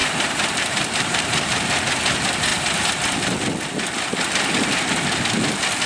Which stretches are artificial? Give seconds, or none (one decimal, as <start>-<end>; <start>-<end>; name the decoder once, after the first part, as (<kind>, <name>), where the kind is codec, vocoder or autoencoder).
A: 0.0-1.8 (vocoder, BigVGAN v2)

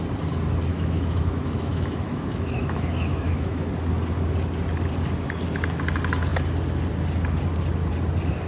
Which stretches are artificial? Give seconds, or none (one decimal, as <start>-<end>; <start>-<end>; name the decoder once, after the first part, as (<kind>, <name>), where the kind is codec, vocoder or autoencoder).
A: 0.7-3.7 (autoencoder, DAC-VAE)

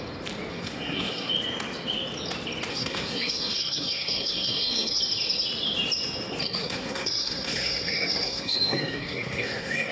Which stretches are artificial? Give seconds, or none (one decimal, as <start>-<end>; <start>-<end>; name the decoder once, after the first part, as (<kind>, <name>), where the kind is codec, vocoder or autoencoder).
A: 0.5-1.3 (codec, SNAC); 2.7-5.0; 6.4-9.9

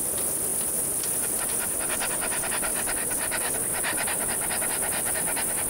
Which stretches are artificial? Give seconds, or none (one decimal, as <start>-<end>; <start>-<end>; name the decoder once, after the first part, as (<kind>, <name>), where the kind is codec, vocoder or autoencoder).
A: none

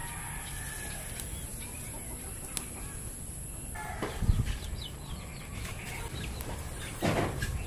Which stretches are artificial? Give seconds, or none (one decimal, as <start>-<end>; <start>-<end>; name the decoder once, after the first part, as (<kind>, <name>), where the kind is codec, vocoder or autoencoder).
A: none

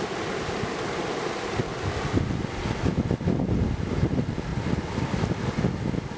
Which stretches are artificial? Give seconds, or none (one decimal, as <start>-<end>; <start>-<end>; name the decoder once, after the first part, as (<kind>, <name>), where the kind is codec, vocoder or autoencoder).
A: none

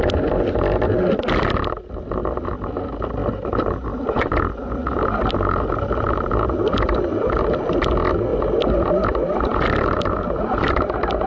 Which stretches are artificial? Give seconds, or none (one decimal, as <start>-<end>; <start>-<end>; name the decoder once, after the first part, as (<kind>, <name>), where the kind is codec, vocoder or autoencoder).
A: none